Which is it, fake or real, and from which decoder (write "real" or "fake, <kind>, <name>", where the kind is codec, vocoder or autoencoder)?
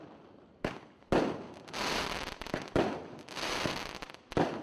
real